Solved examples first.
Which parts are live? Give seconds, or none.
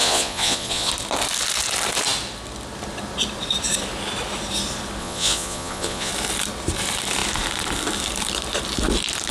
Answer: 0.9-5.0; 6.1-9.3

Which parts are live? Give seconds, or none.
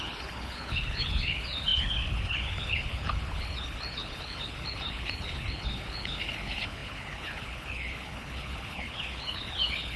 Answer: none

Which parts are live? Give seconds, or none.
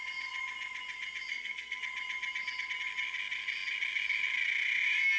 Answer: 0.0-1.3; 1.8-5.2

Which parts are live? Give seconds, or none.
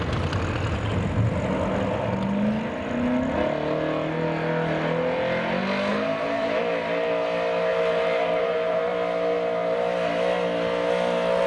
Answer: 0.0-5.9; 6.6-7.7; 8.8-11.5